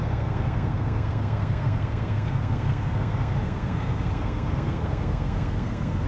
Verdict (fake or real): fake